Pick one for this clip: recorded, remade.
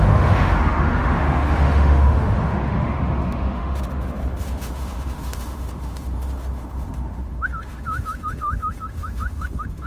remade